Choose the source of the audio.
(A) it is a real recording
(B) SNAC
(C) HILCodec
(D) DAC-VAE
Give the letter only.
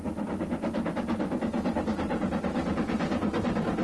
A